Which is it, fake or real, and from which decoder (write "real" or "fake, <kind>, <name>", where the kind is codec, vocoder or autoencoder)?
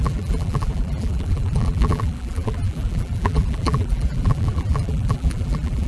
fake, vocoder, BigVGAN v2